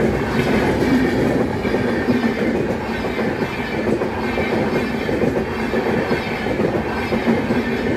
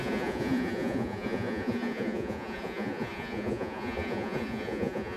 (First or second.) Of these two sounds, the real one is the first